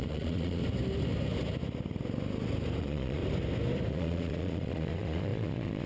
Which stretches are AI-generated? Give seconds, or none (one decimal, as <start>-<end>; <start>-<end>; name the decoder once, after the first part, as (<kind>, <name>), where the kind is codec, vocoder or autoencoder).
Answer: 0.0-0.6 (vocoder, Vocos); 2.8-3.2; 3.9-5.9